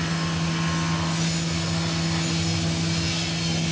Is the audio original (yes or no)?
yes